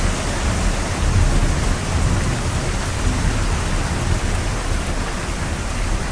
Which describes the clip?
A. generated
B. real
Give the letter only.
B